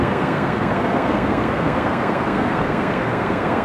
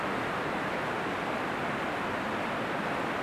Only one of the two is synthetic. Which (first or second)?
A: first